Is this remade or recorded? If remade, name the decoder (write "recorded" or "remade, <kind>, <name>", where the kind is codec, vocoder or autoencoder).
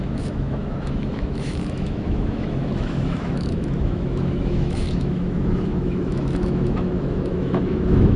remade, autoencoder, DAC-VAE